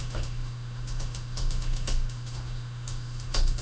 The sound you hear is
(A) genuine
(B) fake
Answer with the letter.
B